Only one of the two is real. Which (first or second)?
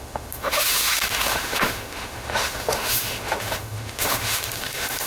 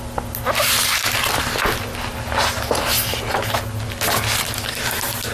second